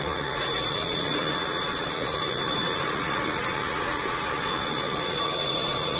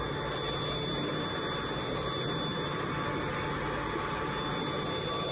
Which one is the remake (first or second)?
first